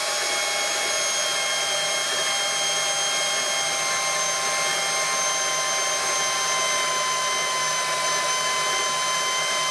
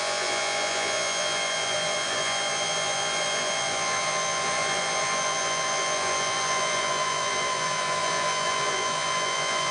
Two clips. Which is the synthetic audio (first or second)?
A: second